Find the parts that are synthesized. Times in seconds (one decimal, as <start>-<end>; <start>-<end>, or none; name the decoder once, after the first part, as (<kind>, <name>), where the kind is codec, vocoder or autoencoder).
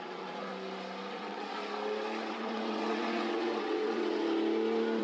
0.0-0.5 (vocoder, WaveNeXt); 1.1-1.6; 2.3-4.2